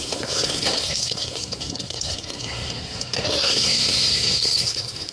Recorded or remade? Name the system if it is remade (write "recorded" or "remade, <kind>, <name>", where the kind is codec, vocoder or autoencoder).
remade, codec, SNAC